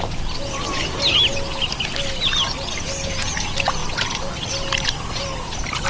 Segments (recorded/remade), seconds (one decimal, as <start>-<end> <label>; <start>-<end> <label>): 0.0-5.9 recorded